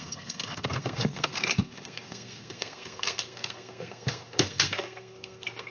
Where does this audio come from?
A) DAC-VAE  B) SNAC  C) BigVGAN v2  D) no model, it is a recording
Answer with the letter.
B